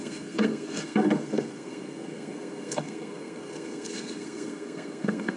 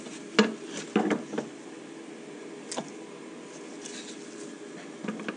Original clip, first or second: second